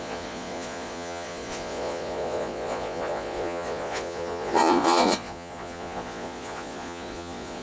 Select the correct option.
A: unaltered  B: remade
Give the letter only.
B